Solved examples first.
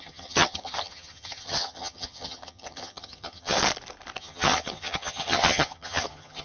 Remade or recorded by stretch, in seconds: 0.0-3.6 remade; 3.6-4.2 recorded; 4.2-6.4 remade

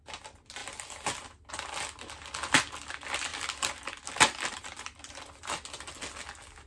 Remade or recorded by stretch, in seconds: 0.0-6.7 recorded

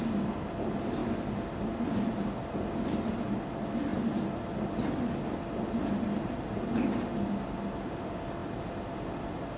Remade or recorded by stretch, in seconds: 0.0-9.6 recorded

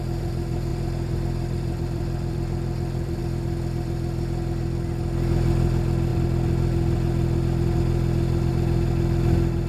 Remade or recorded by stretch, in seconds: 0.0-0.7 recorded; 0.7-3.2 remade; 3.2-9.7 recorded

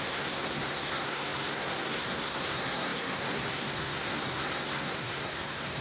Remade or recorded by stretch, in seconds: 0.0-5.8 remade